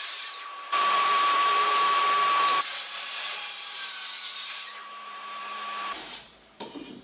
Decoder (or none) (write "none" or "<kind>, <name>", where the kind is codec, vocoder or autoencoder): vocoder, BigVGAN v2